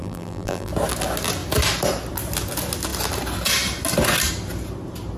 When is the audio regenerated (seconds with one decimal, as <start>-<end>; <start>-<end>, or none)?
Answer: 0.0-0.7